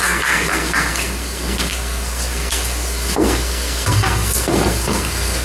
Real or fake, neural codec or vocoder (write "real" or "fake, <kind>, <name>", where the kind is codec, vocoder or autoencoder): fake, codec, SNAC